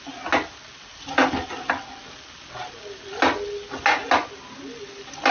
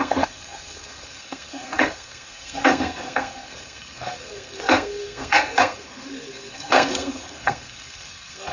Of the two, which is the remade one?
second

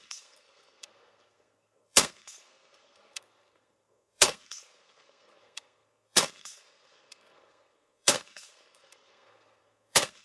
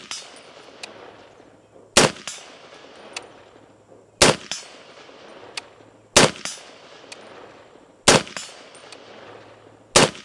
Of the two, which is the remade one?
first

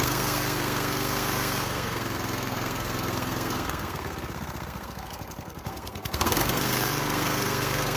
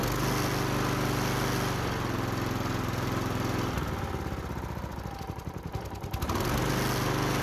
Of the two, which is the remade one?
first